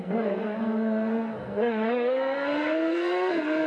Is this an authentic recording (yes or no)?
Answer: no